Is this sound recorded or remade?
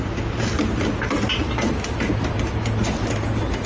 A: recorded